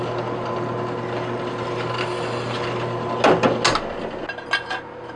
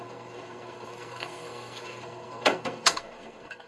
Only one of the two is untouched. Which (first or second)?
first